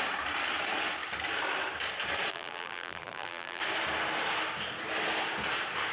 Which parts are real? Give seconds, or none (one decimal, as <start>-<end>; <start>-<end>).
0.0-2.3; 3.6-5.9

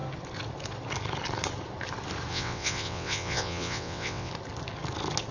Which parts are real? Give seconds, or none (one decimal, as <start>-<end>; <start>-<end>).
0.0-2.3; 4.3-5.3